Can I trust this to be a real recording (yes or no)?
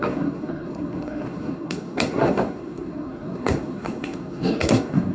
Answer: no